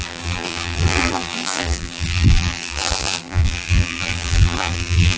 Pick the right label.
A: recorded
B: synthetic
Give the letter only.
B